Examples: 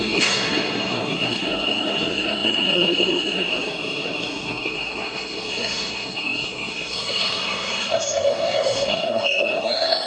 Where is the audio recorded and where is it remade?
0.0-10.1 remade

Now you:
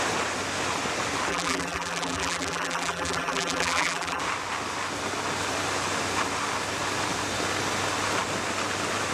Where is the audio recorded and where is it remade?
0.0-1.3 recorded; 1.3-4.2 remade; 4.2-9.1 recorded

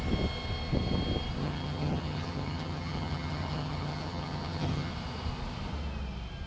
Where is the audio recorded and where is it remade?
0.0-1.4 recorded; 1.4-4.9 remade; 4.9-6.5 recorded

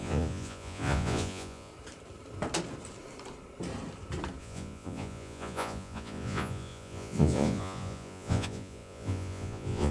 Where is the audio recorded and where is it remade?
0.0-1.7 remade; 1.7-4.4 recorded; 4.4-9.9 remade

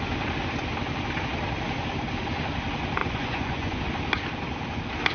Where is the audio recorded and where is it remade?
0.0-3.0 recorded; 3.0-3.8 remade; 3.8-5.1 recorded

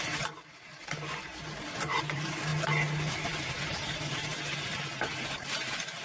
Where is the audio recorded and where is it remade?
0.0-2.5 remade; 2.5-3.1 recorded; 3.1-4.3 remade; 4.3-5.3 recorded; 5.3-6.0 remade

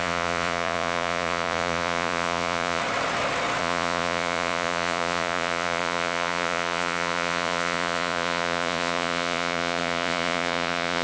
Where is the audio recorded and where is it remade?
0.0-2.8 remade; 2.8-3.6 recorded; 3.6-11.0 remade

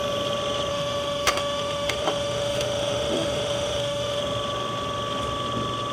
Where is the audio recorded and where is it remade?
0.0-0.7 recorded; 0.7-4.2 remade; 4.2-5.9 recorded